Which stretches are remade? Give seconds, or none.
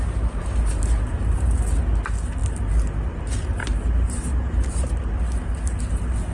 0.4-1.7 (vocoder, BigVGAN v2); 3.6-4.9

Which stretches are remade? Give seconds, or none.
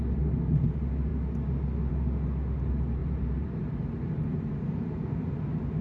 3.0-4.9 (vocoder, BigVGAN v2)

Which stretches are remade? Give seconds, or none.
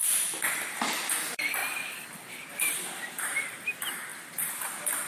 0.0-1.6 (vocoder, BigVGAN v2); 2.5-5.1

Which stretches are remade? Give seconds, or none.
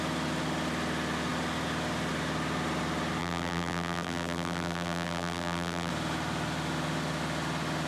3.2-5.9 (vocoder, BigVGAN v2)